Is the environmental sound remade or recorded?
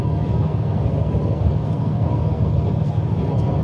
remade